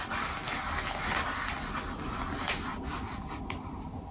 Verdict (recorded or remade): recorded